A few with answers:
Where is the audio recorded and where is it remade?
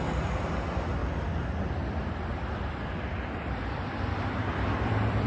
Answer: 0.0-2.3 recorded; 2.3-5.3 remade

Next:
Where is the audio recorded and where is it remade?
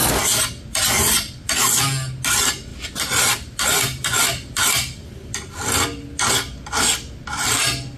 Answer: 0.0-0.7 recorded; 0.7-1.8 remade; 1.8-2.7 recorded; 2.7-6.3 remade; 6.3-8.0 recorded